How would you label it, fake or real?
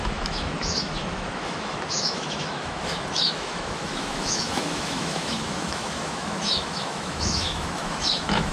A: fake